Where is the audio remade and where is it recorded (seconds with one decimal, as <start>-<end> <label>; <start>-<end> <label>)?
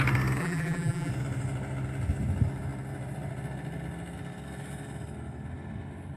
0.0-0.4 recorded; 0.4-1.1 remade; 1.1-6.2 recorded